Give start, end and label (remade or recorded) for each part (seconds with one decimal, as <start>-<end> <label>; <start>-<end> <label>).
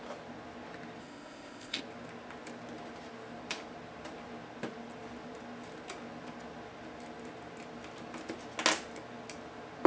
0.0-1.0 recorded; 1.0-1.8 remade; 1.8-9.9 recorded